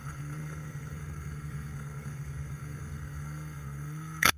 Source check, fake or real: fake